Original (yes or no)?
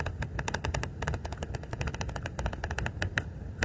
yes